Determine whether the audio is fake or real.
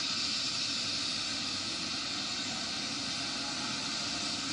real